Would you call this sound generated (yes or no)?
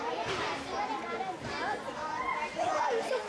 no